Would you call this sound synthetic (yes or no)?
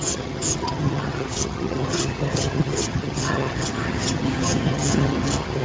yes